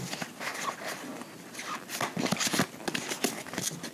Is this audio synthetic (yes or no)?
no